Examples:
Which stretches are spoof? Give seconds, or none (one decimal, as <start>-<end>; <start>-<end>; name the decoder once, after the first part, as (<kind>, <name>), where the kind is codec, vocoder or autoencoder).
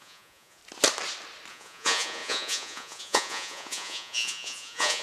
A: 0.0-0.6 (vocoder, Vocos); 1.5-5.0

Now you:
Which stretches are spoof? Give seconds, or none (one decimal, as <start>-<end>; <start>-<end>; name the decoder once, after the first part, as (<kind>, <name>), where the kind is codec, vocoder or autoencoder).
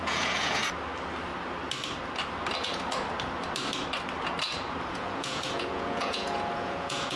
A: 0.0-0.6 (vocoder, Vocos); 4.9-7.2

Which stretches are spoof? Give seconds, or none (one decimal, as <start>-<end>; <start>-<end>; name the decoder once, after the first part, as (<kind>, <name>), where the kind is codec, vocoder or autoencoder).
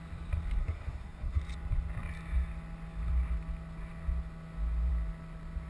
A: 0.6-1.4 (codec, SNAC)